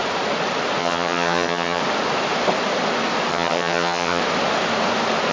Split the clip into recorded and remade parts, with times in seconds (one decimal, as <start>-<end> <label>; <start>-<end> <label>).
0.0-0.8 recorded; 0.8-1.8 remade; 1.8-3.3 recorded; 3.3-4.2 remade; 4.2-5.3 recorded